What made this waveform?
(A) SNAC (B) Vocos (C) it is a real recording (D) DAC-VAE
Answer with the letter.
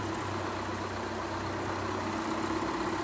C